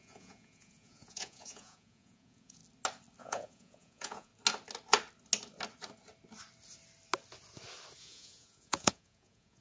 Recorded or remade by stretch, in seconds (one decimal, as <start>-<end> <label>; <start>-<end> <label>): 0.0-2.6 remade; 2.6-3.2 recorded; 3.2-4.3 remade; 4.3-8.0 recorded; 8.0-9.6 remade